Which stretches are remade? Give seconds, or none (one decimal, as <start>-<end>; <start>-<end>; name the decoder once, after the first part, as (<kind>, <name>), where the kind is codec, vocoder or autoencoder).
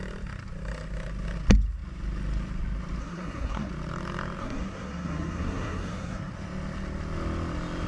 3.0-3.7 (codec, SNAC); 4.4-6.3